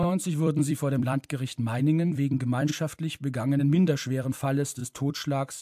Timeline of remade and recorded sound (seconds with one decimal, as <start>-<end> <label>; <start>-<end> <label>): 0.0-2.7 remade; 2.7-3.6 recorded; 3.6-5.6 remade